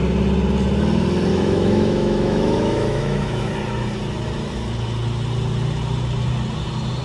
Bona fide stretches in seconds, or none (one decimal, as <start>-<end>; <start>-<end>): 0.0-1.3; 3.5-7.0